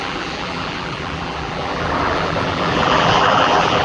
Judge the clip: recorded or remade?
remade